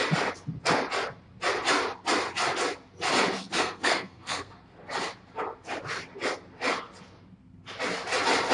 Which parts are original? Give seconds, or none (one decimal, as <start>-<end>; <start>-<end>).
0.0-3.4; 4.5-8.5